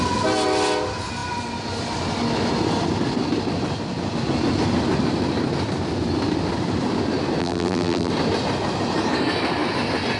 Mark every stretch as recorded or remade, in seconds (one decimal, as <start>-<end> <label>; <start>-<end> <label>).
0.0-7.4 recorded; 7.4-8.1 remade; 8.1-10.2 recorded